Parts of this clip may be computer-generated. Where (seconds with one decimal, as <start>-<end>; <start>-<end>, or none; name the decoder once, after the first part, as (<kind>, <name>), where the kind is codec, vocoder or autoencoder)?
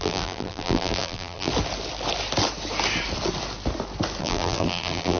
0.0-1.5 (vocoder, BigVGAN v2); 4.2-5.2